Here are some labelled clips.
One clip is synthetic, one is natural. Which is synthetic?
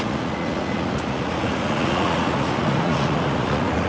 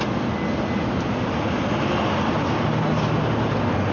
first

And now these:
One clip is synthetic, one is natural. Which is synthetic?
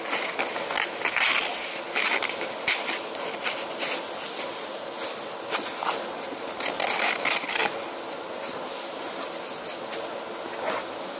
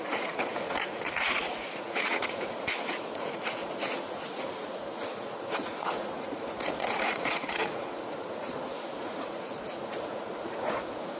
second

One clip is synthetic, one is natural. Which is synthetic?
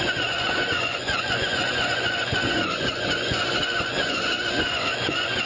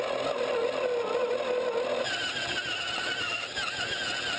first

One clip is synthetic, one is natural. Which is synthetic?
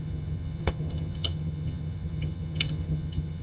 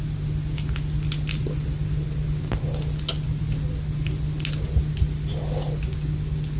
first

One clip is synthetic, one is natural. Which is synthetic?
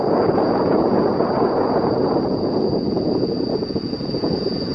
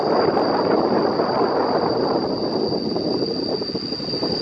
first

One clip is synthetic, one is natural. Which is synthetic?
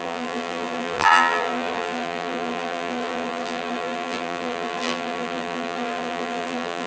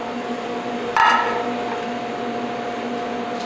first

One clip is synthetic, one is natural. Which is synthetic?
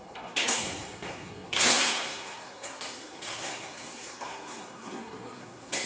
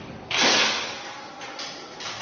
first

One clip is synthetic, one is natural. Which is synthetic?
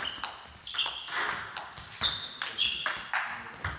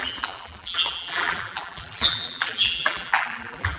second